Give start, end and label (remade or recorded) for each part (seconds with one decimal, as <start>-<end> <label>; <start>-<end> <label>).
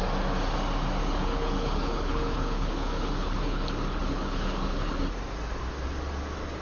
0.0-1.0 recorded; 1.0-5.0 remade; 5.0-6.6 recorded